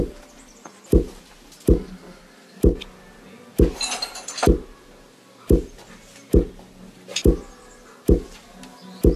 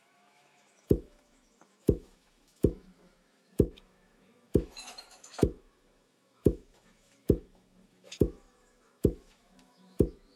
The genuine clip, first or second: first